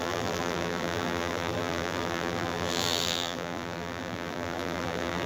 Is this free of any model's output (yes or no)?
no